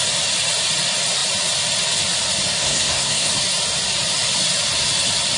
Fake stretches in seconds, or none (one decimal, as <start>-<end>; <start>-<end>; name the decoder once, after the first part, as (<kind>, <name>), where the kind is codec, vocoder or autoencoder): 2.6-3.3 (codec, SNAC)